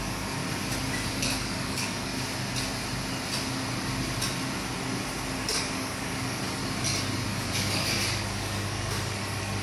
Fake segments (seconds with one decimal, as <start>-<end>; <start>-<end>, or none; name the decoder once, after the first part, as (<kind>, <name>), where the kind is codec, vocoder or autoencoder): 0.0-0.4 (codec, DAC); 1.1-2.1; 5.4-6.6; 7.3-9.6